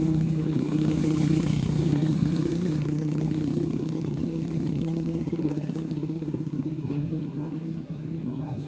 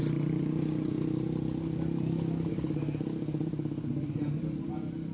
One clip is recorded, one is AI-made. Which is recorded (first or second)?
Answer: second